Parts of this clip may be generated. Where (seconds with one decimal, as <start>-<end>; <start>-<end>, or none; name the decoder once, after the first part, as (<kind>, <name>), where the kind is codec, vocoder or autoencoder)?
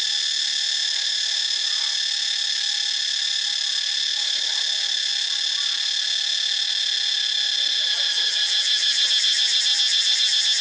0.8-1.7 (autoencoder, DAC-VAE); 4.1-4.6